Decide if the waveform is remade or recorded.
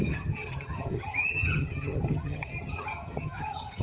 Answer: remade